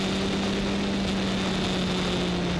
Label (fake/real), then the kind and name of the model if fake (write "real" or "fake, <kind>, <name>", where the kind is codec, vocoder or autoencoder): real